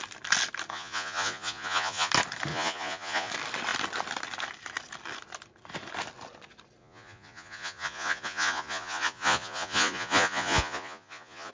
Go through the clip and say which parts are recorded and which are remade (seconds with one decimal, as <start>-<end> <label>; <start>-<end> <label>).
0.0-0.7 recorded; 0.7-2.1 remade; 2.1-2.5 recorded; 2.5-3.3 remade; 3.3-6.8 recorded; 6.8-11.5 remade